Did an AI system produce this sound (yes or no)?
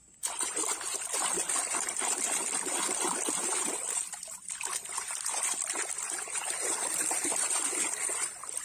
yes